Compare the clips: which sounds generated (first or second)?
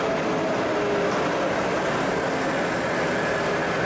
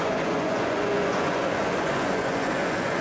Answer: second